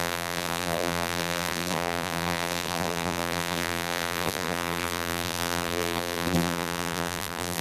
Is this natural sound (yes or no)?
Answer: no